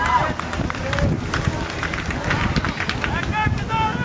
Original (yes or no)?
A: yes